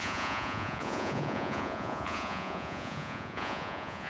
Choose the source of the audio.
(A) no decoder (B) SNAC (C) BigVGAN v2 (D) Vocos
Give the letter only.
D